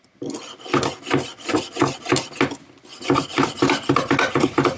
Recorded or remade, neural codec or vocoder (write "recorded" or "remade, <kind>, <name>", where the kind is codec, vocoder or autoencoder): recorded